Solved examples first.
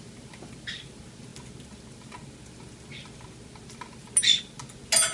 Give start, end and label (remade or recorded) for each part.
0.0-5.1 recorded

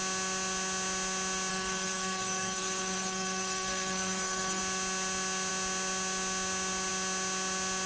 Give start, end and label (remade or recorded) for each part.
0.0-1.5 recorded; 1.5-4.6 remade; 4.6-7.9 recorded

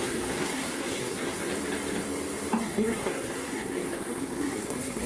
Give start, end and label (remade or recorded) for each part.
0.0-1.5 remade; 1.5-2.6 recorded; 2.6-5.1 remade

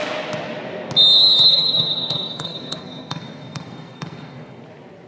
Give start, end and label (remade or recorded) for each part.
0.0-1.5 recorded; 1.5-4.6 remade; 4.6-5.1 recorded

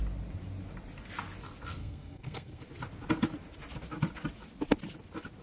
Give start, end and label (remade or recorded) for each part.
0.0-1.8 recorded; 1.8-2.6 remade; 2.6-5.4 recorded

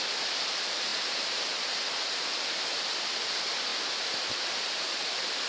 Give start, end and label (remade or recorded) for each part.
0.0-5.5 recorded

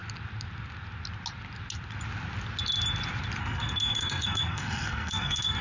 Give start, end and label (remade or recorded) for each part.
0.0-3.4 recorded; 3.4-5.6 remade

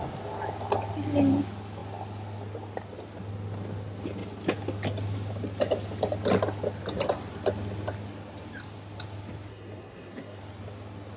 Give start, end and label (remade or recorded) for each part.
0.0-9.5 recorded; 9.5-10.4 remade; 10.4-11.2 recorded